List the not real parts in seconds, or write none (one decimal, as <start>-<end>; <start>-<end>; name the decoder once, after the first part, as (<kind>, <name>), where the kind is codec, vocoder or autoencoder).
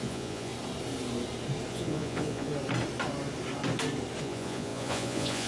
0.0-0.5 (vocoder, Vocos); 1.7-2.5; 4.2-5.5